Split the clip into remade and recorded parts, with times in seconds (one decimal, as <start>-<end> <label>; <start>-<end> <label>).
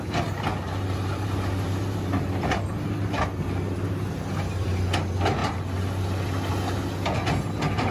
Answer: 0.0-0.6 recorded; 0.6-4.1 remade; 4.1-7.9 recorded